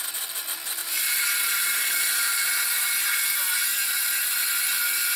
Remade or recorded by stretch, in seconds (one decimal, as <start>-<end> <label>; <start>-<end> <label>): 0.0-0.8 recorded; 0.8-3.9 remade; 3.9-5.2 recorded